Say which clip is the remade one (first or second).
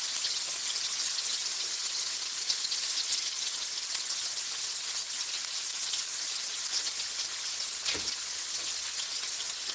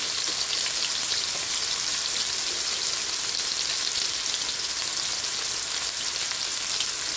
first